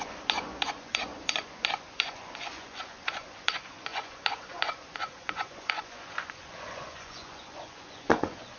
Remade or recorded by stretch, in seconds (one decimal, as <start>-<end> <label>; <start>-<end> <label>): 0.0-8.6 remade